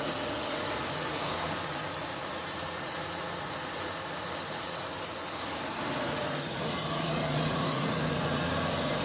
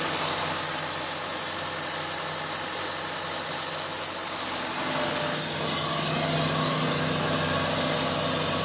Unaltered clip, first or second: second